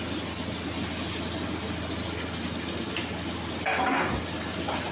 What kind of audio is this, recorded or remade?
recorded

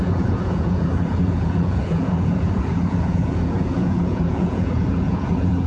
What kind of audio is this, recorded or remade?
remade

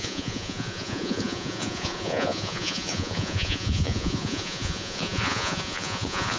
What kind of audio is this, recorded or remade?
remade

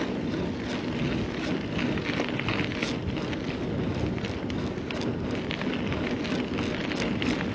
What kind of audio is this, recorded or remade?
recorded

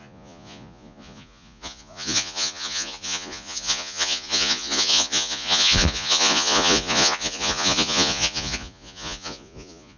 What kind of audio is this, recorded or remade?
remade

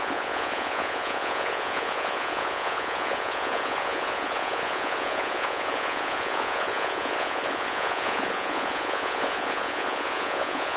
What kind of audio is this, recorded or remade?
remade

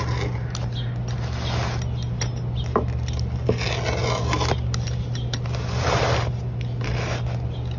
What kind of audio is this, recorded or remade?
recorded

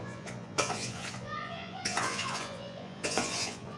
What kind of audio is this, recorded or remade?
remade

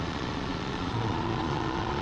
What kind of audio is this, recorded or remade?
remade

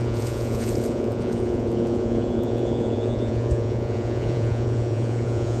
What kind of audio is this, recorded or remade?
remade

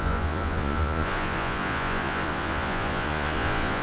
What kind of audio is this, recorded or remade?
remade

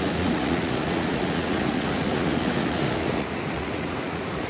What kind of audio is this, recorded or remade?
remade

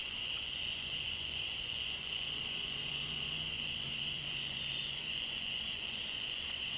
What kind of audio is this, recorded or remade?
remade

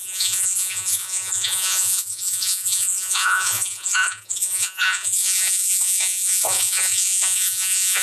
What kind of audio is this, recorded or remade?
remade